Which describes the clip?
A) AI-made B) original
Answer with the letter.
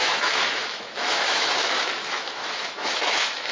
A